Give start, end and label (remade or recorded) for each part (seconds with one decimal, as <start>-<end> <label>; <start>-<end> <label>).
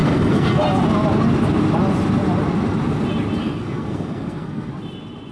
0.0-0.6 remade; 0.6-3.4 recorded; 3.4-4.7 remade; 4.7-5.3 recorded